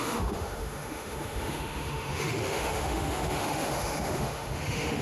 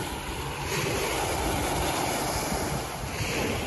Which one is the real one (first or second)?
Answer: second